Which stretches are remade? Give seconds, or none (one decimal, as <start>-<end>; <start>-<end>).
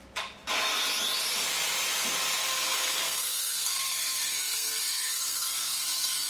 2.4-6.3